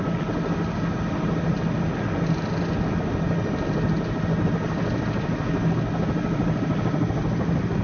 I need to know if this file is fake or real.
real